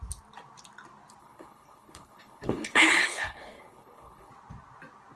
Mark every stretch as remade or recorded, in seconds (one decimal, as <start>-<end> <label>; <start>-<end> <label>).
0.0-1.2 recorded; 1.2-4.3 remade; 4.3-5.2 recorded